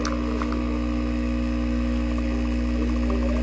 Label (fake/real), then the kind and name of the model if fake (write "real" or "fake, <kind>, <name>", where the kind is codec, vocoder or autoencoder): real